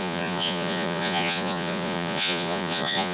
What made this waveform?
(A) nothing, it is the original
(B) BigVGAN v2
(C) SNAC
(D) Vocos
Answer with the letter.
D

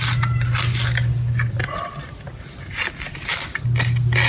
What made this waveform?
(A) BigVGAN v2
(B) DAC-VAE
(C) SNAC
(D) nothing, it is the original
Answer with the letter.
D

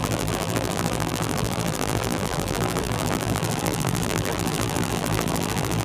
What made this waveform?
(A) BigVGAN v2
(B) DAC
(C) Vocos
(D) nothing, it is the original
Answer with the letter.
A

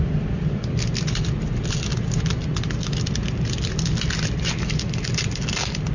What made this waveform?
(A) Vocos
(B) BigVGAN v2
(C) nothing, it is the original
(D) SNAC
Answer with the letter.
C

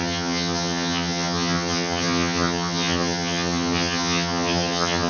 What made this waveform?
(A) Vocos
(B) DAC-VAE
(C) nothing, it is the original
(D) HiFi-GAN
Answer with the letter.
D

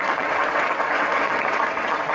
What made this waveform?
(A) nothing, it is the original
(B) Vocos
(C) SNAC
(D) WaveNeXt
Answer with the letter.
D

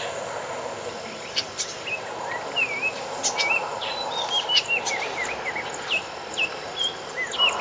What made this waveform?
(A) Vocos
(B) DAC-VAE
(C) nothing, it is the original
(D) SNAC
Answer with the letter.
C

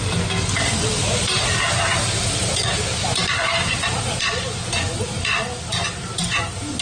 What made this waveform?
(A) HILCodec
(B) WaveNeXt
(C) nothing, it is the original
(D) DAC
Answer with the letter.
C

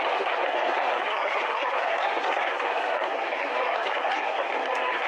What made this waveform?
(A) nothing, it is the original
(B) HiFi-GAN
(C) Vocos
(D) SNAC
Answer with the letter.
D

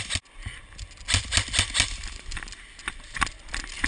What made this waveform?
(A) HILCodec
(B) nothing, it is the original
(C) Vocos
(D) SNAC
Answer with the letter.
B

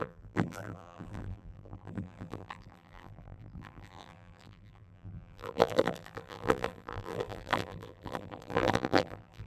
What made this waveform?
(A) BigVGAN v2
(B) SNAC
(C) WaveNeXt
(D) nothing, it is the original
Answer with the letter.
A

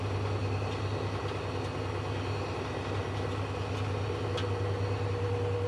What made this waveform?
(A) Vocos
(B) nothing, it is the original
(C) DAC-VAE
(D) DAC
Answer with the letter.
B